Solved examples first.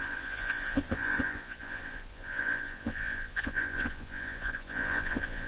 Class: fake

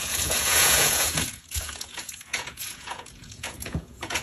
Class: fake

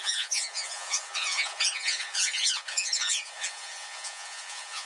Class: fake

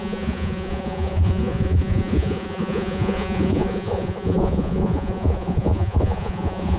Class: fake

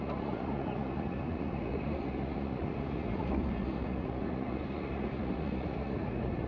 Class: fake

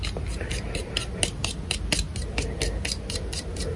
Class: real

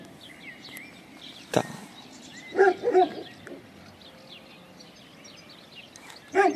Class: real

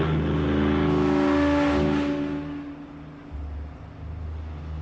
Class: real